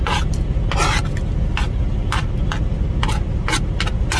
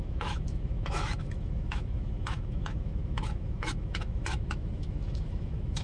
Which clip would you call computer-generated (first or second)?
second